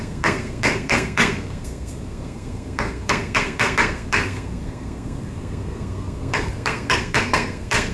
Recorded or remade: remade